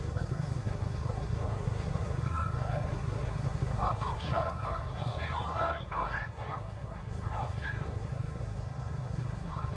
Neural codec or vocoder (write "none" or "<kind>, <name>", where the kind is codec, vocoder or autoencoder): codec, SNAC